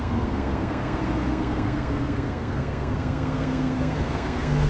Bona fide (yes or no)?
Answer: no